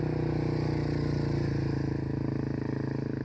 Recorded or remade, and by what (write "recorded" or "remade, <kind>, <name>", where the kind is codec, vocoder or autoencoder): recorded